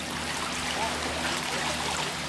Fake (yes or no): no